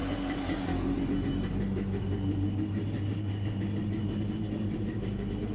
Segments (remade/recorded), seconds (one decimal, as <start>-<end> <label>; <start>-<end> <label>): 0.0-5.5 recorded